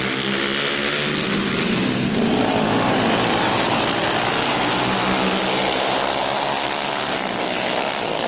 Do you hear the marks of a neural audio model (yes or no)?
no